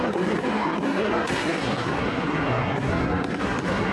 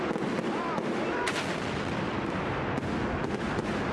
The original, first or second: second